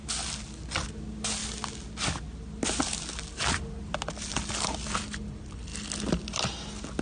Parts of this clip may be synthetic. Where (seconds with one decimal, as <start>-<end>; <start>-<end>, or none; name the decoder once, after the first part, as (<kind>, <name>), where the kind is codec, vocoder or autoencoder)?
none